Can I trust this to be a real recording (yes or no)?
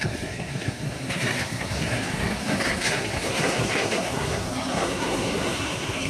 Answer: no